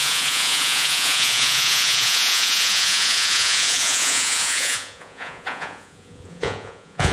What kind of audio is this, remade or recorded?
remade